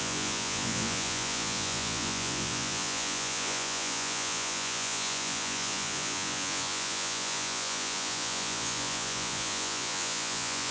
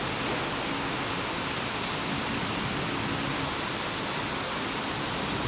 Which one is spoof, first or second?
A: first